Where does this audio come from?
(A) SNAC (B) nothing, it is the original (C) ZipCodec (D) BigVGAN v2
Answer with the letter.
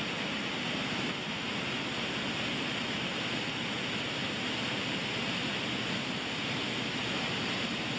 B